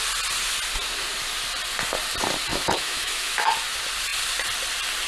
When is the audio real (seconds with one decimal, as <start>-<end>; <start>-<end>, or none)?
0.0-2.5; 3.5-5.1